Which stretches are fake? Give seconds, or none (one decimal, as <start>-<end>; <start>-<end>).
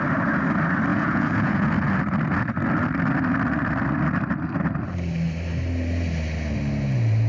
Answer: 0.9-1.7